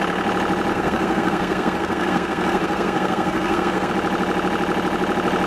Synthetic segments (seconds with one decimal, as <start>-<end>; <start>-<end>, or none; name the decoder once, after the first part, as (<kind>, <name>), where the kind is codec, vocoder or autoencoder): 0.7-3.9 (codec, SNAC)